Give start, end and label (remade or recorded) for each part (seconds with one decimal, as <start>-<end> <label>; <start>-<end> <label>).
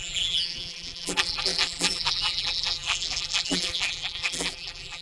0.0-5.0 remade